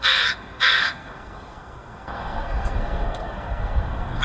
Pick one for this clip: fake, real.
fake